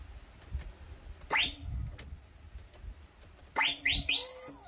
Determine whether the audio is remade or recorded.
recorded